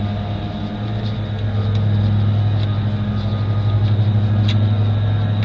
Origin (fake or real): real